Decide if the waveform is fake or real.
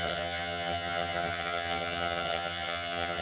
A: fake